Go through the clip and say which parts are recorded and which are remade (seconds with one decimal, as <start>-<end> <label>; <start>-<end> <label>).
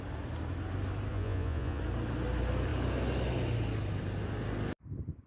0.0-1.1 recorded; 1.1-1.8 remade; 1.8-5.3 recorded